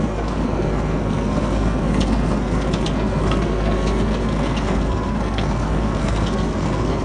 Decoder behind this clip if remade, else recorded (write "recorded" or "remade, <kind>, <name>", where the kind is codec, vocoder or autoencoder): remade, codec, SNAC